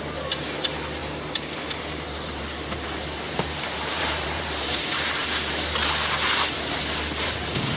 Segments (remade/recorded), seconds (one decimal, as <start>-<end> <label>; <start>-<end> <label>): 0.0-1.0 recorded; 1.0-4.8 remade; 4.8-7.8 recorded